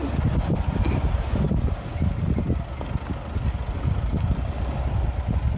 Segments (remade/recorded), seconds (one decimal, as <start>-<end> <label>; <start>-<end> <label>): 0.0-5.6 recorded